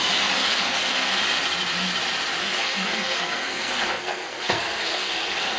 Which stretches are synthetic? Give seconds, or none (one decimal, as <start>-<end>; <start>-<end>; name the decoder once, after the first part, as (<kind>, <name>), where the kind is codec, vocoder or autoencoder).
0.4-1.2 (codec, SNAC); 2.4-5.6